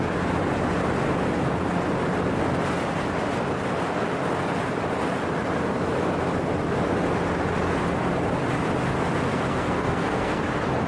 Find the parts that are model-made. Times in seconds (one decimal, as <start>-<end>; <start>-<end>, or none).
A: 9.3-10.4